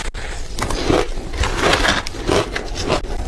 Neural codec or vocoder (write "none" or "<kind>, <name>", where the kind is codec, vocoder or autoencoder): none